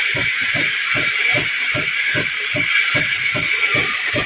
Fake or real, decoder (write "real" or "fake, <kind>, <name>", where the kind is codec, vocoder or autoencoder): real